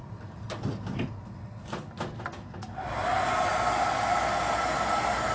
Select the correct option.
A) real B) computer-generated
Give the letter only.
A